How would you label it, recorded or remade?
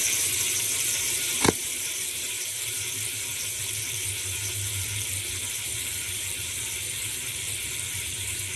remade